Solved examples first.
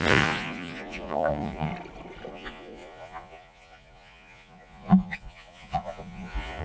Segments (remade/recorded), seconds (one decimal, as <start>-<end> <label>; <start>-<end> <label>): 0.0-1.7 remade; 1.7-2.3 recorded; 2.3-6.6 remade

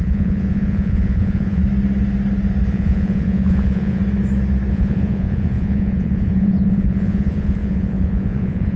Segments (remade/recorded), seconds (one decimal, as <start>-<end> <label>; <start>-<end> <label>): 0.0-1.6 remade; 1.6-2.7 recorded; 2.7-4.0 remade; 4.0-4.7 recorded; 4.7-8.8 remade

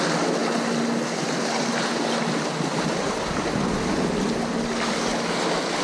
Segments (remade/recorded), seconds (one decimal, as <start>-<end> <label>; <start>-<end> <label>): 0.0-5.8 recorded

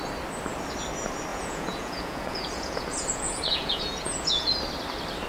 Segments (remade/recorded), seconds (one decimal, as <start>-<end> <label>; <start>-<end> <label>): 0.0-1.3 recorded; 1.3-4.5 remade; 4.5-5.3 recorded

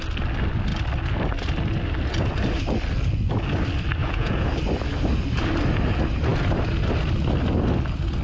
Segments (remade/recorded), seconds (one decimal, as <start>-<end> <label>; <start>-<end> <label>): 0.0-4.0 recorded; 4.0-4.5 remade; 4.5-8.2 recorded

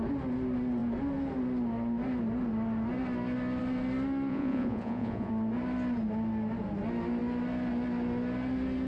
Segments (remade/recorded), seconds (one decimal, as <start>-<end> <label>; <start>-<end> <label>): 0.0-4.3 recorded; 4.3-5.3 remade; 5.3-8.9 recorded